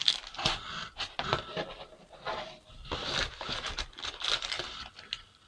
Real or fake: fake